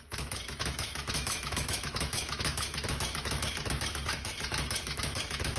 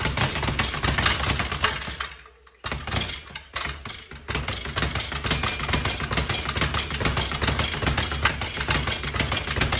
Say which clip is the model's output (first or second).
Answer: first